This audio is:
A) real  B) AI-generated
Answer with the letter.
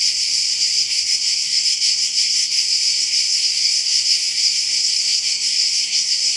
B